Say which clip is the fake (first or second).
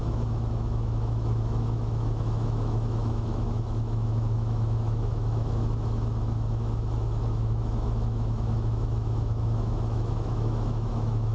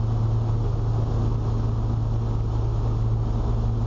first